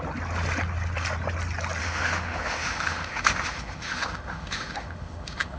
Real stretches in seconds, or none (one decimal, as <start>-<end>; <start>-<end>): 0.0-1.8